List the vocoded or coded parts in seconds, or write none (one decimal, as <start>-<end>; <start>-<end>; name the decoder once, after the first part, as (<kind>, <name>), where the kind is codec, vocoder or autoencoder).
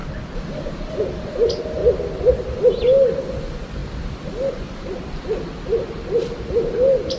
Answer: none